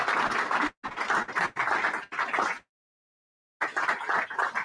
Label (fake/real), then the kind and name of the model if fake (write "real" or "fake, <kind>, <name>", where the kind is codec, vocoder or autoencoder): real